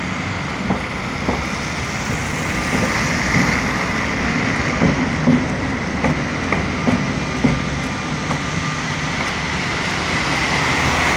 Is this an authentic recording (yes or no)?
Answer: yes